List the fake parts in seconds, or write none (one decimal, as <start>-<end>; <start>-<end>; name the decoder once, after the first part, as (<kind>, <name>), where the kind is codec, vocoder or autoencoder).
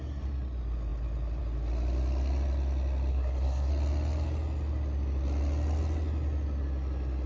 3.1-3.7 (codec, SNAC)